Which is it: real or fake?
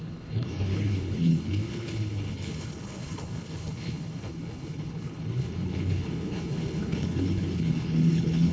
fake